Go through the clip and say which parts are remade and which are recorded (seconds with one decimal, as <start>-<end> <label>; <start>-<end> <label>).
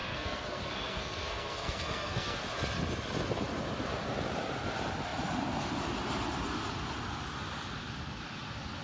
0.0-2.4 remade; 2.4-8.8 recorded